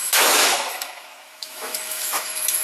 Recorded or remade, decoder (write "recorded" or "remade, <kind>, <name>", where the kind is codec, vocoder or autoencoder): remade, autoencoder, DAC-VAE